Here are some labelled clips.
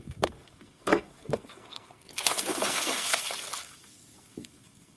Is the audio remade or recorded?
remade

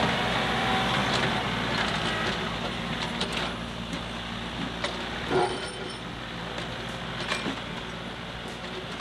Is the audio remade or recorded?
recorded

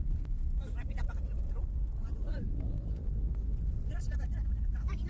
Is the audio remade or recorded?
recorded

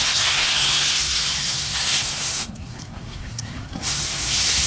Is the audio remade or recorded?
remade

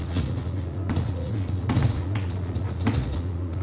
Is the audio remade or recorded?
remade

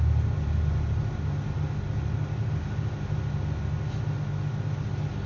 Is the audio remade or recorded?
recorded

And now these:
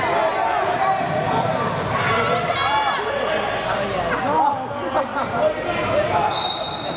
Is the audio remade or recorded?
recorded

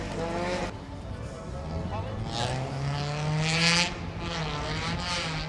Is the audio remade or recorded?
recorded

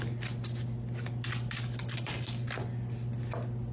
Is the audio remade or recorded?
recorded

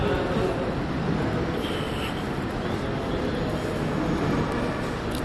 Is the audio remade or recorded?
recorded